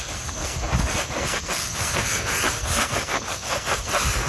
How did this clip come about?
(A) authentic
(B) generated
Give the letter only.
B